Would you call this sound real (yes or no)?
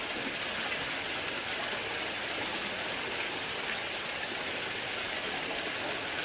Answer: yes